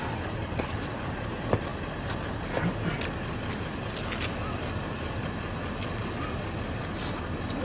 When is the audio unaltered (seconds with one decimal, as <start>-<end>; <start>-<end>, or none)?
0.0-7.6